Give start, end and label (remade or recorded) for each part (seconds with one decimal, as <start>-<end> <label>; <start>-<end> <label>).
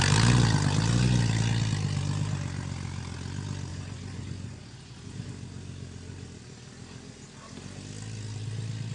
0.0-3.7 recorded; 3.7-5.3 remade; 5.3-8.9 recorded